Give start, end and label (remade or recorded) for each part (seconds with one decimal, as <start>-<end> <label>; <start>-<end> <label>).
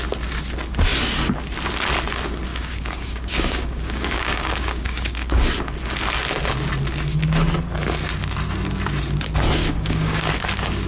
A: 0.0-2.5 recorded; 2.5-5.5 remade; 5.5-9.6 recorded; 9.6-10.4 remade; 10.4-10.9 recorded